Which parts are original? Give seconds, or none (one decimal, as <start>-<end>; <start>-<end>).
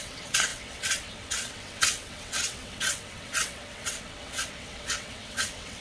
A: none